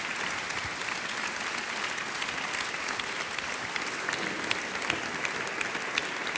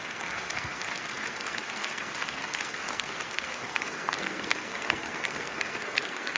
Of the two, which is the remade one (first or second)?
second